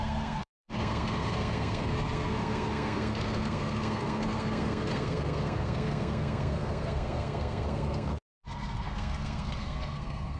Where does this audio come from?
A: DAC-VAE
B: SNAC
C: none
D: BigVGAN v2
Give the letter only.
B